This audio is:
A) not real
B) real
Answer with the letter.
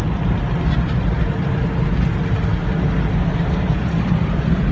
B